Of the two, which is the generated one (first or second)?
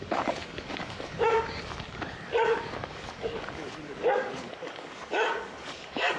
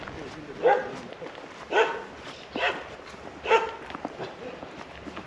first